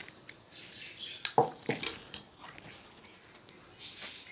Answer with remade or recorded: recorded